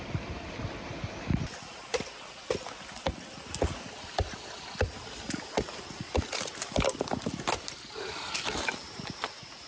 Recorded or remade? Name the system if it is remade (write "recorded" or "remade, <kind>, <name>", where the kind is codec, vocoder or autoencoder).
recorded